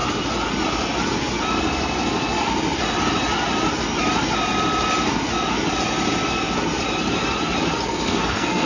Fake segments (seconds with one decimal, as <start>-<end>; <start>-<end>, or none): 7.9-8.7